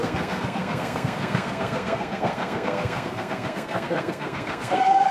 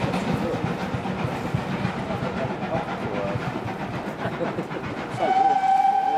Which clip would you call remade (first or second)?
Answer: first